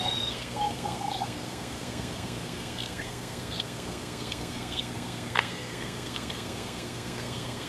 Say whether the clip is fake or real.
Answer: fake